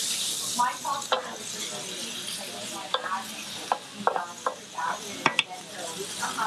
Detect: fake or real real